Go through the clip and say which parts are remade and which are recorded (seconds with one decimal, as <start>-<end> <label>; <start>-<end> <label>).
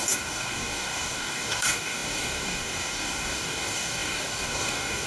0.0-5.1 remade